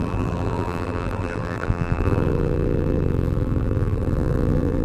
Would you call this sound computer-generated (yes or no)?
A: yes